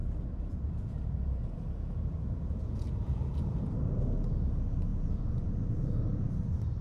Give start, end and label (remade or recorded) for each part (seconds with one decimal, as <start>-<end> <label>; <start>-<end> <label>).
0.0-3.7 remade; 3.7-4.9 recorded; 4.9-6.3 remade; 6.3-6.8 recorded